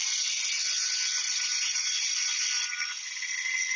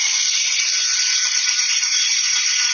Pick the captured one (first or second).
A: first